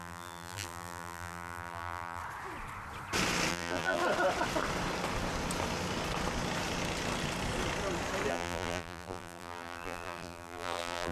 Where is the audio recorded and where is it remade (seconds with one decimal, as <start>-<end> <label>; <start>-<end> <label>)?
0.0-2.2 remade; 2.2-3.5 recorded; 3.5-4.0 remade; 4.0-8.3 recorded; 8.3-11.1 remade